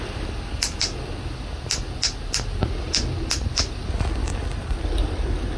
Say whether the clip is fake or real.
real